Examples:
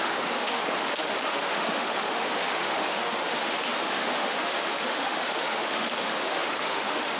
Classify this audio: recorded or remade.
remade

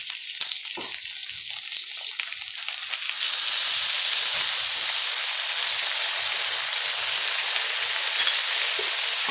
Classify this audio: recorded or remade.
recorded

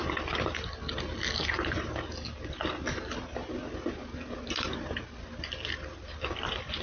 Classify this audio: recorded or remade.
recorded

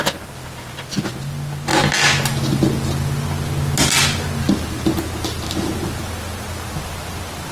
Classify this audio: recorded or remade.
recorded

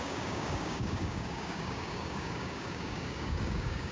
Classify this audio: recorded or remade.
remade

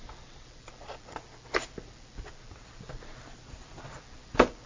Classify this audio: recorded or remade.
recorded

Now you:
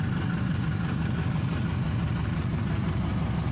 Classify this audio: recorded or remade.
remade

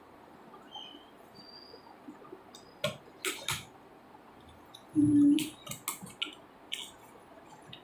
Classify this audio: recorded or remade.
recorded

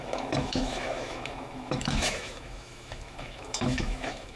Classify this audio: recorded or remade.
remade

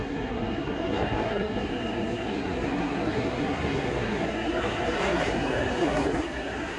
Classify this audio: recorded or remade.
remade